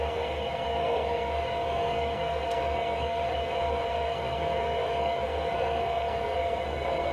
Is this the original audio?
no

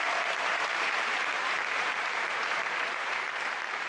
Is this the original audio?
no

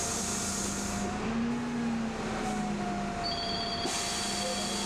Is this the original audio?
yes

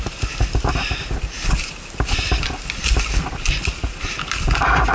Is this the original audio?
yes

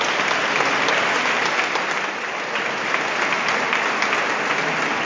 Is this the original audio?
yes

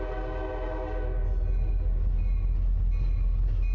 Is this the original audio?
yes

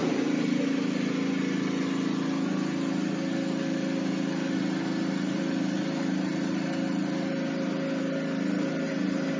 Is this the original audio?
yes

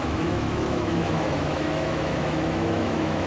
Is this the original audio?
no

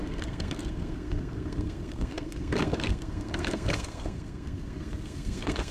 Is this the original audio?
no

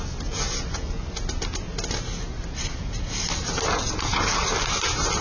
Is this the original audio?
yes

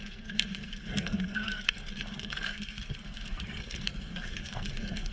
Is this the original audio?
no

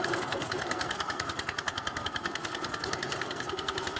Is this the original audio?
no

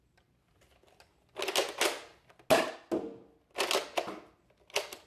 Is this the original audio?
yes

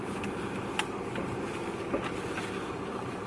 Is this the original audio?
yes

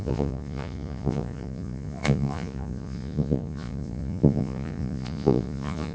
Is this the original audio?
no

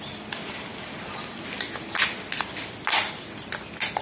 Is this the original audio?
yes